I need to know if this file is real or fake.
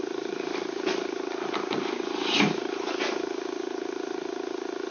real